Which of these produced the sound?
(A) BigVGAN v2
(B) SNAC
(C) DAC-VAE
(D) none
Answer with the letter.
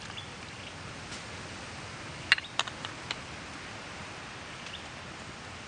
D